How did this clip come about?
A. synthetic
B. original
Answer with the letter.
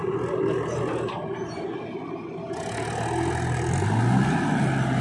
B